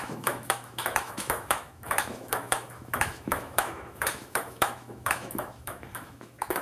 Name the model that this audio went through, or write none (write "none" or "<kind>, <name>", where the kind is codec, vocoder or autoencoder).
autoencoder, DAC-VAE